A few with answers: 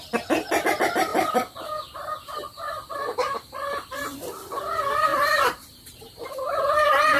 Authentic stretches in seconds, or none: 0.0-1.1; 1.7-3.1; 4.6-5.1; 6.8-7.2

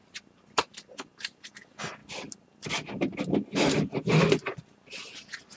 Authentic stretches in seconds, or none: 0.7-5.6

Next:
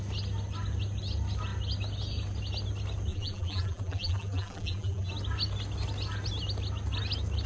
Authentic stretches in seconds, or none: 0.0-3.1; 5.1-7.5